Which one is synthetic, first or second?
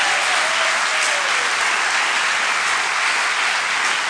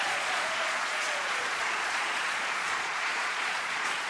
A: second